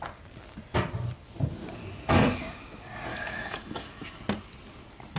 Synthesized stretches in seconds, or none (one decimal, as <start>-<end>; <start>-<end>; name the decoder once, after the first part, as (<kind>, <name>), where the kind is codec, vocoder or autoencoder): 3.1-4.2 (autoencoder, DAC-VAE)